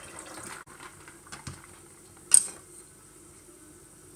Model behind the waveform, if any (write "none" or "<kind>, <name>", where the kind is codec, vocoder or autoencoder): none